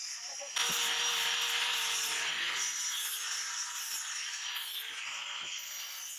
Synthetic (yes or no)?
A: no